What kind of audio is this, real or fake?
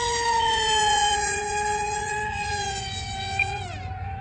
fake